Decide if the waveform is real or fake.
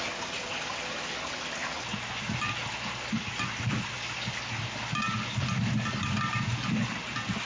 real